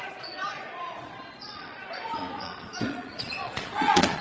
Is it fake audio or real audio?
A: fake